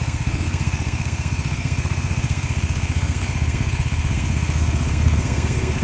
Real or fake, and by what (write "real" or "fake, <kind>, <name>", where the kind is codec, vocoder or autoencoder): fake, codec, SNAC